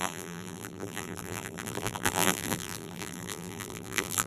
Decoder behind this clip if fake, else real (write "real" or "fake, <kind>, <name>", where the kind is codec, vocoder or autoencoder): fake, vocoder, BigVGAN v2